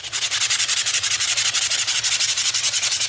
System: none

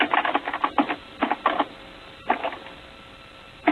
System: none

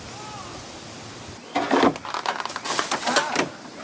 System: none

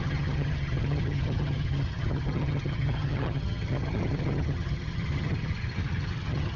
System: vocoder, HiFi-GAN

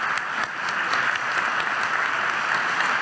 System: none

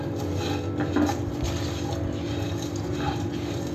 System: none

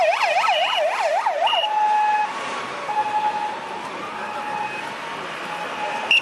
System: none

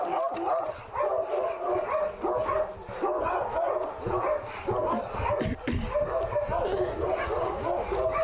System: none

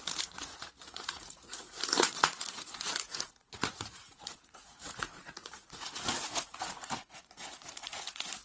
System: vocoder, Vocos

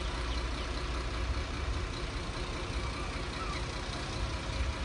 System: none